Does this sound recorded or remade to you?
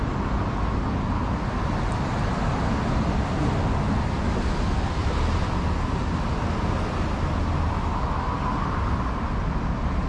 recorded